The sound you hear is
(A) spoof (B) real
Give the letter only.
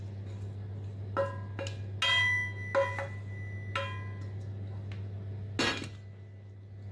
B